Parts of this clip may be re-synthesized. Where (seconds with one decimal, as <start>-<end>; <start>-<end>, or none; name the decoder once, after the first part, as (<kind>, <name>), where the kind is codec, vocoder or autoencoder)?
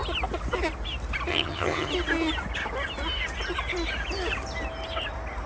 1.3-1.9 (vocoder, HiFi-GAN)